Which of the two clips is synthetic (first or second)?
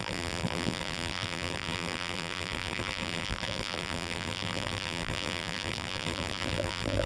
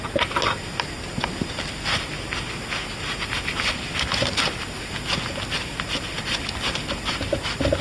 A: first